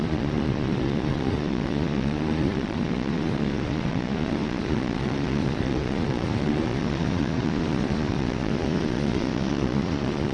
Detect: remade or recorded remade